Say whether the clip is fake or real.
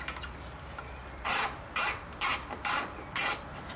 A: real